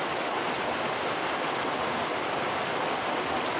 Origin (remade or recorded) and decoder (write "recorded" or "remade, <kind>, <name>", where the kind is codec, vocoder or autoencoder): recorded